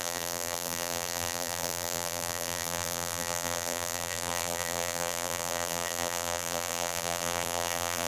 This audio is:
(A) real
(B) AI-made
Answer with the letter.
B